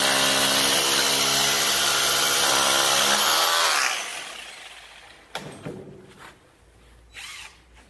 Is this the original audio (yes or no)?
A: yes